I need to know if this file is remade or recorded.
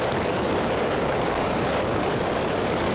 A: remade